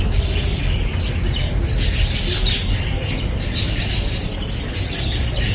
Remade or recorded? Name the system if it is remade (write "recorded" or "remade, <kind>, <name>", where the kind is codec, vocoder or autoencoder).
recorded